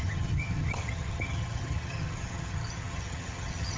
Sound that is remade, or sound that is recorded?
remade